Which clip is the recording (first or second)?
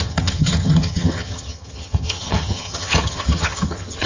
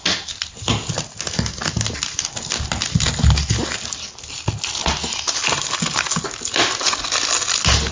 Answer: second